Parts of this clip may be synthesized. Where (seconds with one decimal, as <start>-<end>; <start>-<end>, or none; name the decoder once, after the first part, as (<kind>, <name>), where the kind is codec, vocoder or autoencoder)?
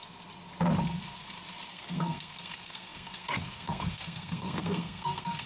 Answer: 1.7-5.5 (codec, SNAC)